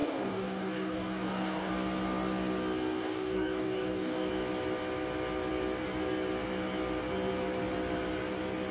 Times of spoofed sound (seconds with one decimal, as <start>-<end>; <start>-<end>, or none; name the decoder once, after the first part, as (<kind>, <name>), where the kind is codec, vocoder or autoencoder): 0.0-1.7 (codec, DAC); 3.0-4.3